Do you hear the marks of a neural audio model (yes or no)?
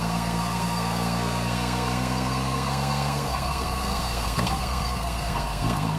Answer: yes